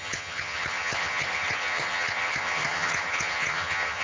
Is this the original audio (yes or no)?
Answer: no